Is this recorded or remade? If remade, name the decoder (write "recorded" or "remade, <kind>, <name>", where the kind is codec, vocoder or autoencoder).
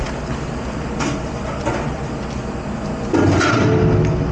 recorded